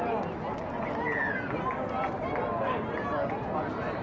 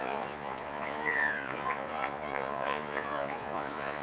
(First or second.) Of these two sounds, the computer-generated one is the second